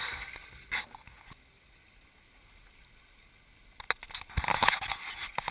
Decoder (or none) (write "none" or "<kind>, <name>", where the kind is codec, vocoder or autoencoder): none